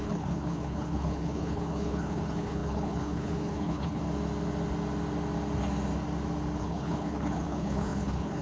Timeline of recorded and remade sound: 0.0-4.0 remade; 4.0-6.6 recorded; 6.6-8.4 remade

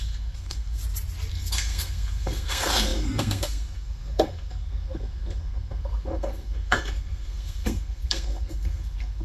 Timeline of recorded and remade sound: 0.0-0.8 remade; 0.8-1.3 recorded; 1.3-9.2 remade

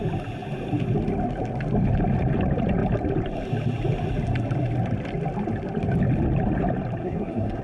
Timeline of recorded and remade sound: 0.0-7.0 recorded; 7.0-7.6 remade

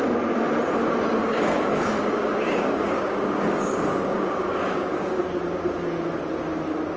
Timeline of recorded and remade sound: 0.0-1.2 recorded; 1.2-5.2 remade; 5.2-7.0 recorded

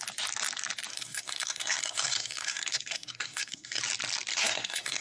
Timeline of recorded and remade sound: 0.0-0.9 recorded; 0.9-3.8 remade; 3.8-4.3 recorded; 4.3-5.0 remade